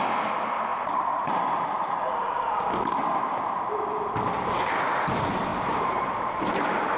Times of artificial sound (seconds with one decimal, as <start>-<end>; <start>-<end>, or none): 0.7-1.3; 5.5-6.1